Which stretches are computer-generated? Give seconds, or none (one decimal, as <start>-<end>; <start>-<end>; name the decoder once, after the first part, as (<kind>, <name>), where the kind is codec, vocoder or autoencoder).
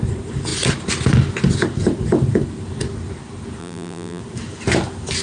3.6-4.2 (vocoder, BigVGAN v2)